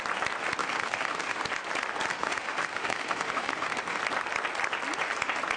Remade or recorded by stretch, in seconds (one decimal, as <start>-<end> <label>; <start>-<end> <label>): 0.0-0.6 recorded; 0.6-1.4 remade; 1.4-2.1 recorded; 2.1-4.0 remade; 4.0-5.6 recorded